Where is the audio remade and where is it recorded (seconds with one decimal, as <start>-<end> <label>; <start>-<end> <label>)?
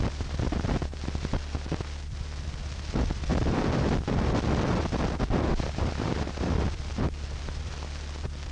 0.0-3.3 recorded; 3.3-4.7 remade; 4.7-5.5 recorded; 5.5-6.8 remade; 6.8-8.5 recorded